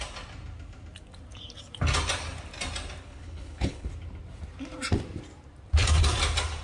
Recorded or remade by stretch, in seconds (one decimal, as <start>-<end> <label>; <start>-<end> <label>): 0.0-3.0 recorded; 3.0-3.9 remade; 3.9-6.6 recorded